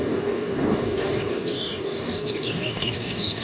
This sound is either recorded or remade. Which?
remade